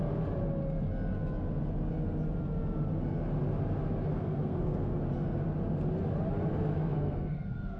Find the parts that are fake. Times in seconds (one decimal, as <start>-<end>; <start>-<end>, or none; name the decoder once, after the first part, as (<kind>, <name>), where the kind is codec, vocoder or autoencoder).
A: 4.1-5.0 (codec, SNAC); 6.7-7.8